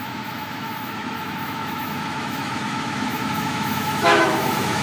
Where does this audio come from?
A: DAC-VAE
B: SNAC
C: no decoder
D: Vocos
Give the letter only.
A